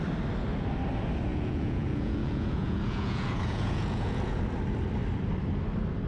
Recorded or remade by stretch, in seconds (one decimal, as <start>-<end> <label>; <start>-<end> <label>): 0.0-1.3 recorded; 1.3-4.4 remade; 4.4-6.1 recorded